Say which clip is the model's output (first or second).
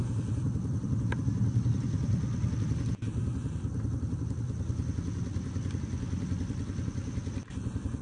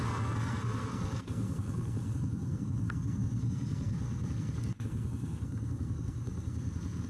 second